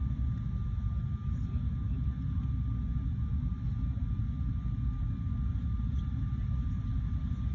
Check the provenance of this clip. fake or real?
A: real